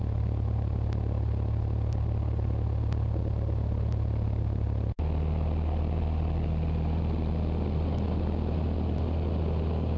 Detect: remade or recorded recorded